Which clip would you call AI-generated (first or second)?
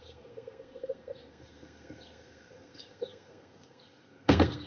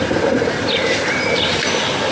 first